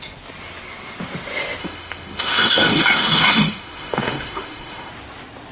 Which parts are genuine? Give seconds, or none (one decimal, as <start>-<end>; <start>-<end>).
0.0-1.6; 4.9-5.5